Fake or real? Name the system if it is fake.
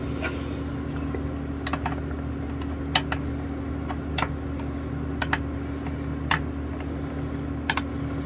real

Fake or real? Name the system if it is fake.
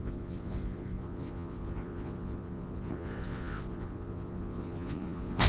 fake, vocoder, Vocos